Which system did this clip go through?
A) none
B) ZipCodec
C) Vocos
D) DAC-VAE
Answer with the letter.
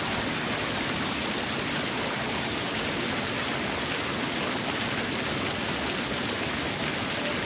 A